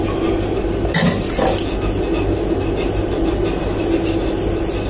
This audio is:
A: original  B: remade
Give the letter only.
A